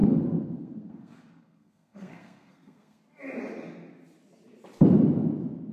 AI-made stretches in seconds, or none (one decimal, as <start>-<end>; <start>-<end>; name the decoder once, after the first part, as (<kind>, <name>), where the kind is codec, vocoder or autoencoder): 0.0-3.0 (codec, SNAC)